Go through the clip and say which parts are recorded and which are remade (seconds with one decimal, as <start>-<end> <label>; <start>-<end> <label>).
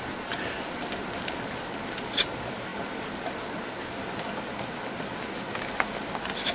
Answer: 0.0-6.5 recorded